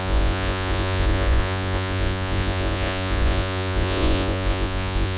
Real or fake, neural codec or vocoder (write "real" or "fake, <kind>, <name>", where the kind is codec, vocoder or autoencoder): fake, vocoder, Vocos